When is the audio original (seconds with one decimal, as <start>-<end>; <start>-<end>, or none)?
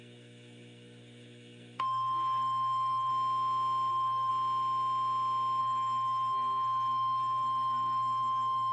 3.1-3.9; 4.3-5.6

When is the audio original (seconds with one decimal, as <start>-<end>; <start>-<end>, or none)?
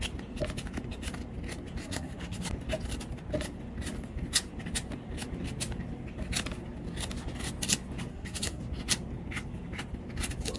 0.0-1.8; 2.4-8.1; 8.6-10.6